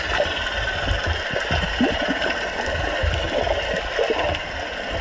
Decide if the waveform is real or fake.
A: real